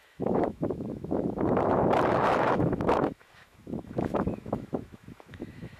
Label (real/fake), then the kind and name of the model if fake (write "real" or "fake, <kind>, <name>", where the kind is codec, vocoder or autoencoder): fake, autoencoder, DAC-VAE